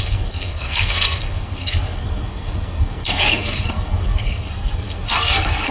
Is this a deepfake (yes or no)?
yes